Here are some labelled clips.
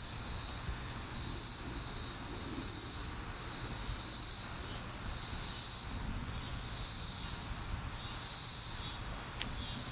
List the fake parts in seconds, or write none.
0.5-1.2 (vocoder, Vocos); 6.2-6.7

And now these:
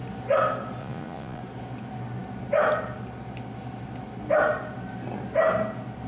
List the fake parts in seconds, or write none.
0.8-1.4 (vocoder, Vocos)

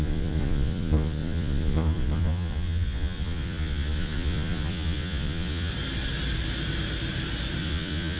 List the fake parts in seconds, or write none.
0.0-5.7 (vocoder, Vocos); 7.6-8.2

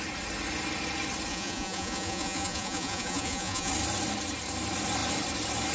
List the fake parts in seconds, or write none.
1.3-3.7 (vocoder, Vocos)

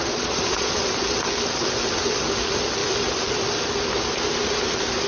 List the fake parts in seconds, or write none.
0.0-0.8 (vocoder, Vocos)

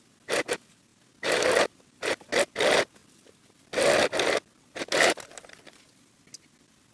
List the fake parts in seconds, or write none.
none